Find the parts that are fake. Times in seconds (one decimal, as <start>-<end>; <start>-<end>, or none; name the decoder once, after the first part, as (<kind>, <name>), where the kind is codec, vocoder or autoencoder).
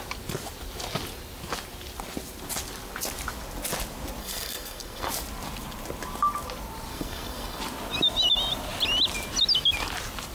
4.2-5.1 (codec, SNAC); 6.9-7.6